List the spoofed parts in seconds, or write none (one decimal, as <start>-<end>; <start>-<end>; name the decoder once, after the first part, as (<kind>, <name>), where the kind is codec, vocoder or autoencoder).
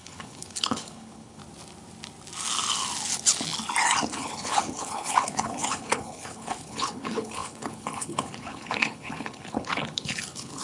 0.0-1.4 (codec, HILCodec); 4.1-10.6